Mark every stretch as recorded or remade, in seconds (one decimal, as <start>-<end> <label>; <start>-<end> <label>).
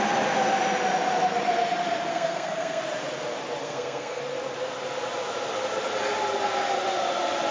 0.0-2.1 recorded; 2.1-2.8 remade; 2.8-3.6 recorded; 3.6-4.2 remade; 4.2-7.5 recorded